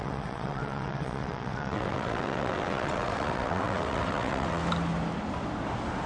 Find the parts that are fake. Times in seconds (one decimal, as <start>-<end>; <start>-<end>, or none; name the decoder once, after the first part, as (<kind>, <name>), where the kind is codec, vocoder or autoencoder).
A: 0.0-4.6 (vocoder, WaveNeXt)